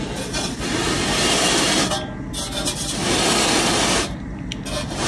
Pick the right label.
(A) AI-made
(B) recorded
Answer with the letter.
B